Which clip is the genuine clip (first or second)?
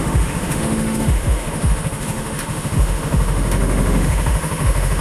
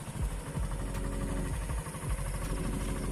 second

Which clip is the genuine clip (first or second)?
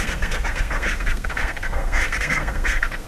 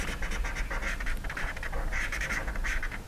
second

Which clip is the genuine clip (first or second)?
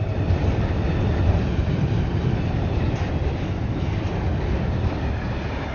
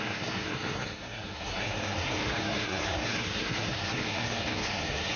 first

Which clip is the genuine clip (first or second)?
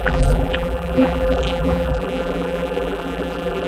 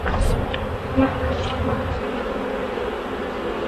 second